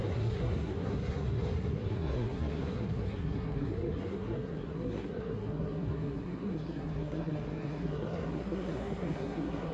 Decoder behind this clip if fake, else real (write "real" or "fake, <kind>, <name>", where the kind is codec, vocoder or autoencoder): fake, codec, SNAC